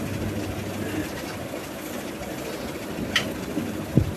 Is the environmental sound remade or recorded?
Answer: recorded